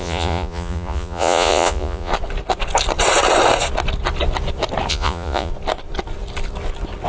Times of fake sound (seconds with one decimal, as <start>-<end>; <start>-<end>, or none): 0.0-2.1; 4.9-5.5